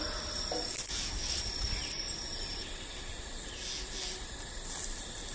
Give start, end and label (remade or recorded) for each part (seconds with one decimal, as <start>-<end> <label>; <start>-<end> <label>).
0.0-5.3 recorded